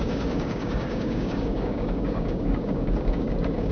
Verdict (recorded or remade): remade